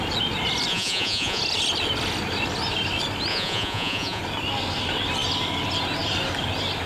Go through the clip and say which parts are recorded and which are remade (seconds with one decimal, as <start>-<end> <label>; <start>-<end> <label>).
0.0-0.7 recorded; 0.7-1.4 remade; 1.4-3.3 recorded; 3.3-4.2 remade; 4.2-6.9 recorded